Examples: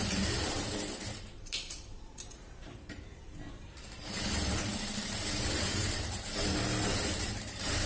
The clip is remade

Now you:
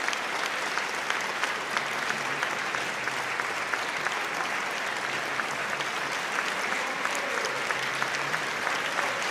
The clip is recorded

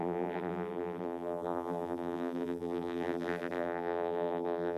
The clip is remade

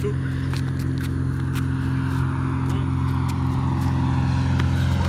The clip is recorded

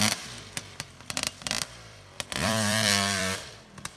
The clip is remade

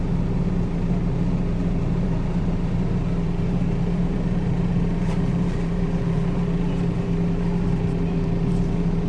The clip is remade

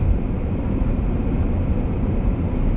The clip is remade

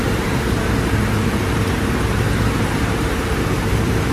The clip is remade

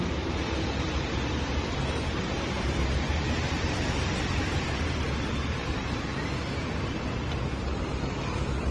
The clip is remade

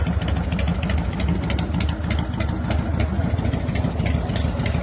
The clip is recorded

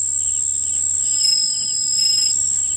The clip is recorded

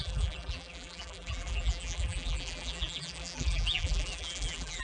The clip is remade